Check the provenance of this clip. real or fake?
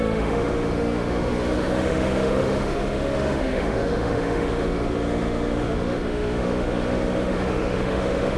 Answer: fake